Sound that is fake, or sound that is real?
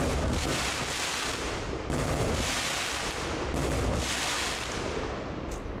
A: real